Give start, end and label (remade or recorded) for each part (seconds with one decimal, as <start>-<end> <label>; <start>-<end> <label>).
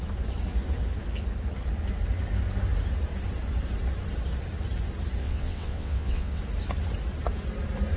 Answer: 0.0-5.2 recorded; 5.2-6.4 remade; 6.4-8.0 recorded